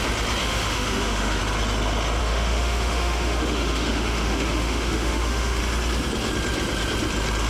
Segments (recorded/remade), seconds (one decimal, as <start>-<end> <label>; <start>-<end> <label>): 0.0-0.4 recorded; 0.4-1.4 remade; 1.4-2.2 recorded; 2.2-5.6 remade; 5.6-7.5 recorded